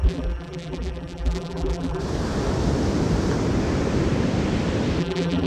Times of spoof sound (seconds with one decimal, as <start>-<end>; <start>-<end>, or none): 0.0-2.0; 5.0-5.5